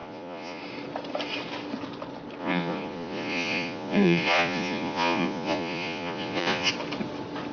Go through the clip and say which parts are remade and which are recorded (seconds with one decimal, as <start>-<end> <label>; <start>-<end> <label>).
0.0-0.6 remade; 0.6-2.4 recorded; 2.4-6.7 remade; 6.7-7.5 recorded